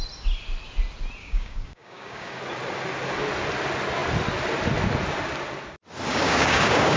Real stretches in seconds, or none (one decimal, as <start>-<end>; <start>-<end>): 0.0-1.2; 2.4-6.1